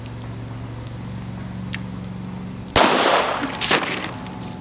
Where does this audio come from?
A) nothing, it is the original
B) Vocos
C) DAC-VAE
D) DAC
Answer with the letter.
A